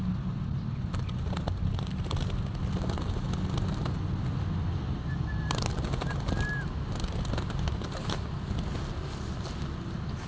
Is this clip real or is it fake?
real